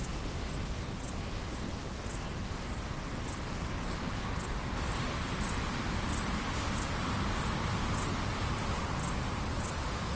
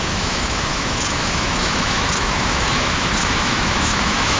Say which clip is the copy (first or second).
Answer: second